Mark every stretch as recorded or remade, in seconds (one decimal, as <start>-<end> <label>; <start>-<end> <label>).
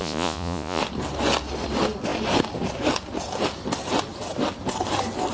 0.0-0.8 remade; 0.8-5.3 recorded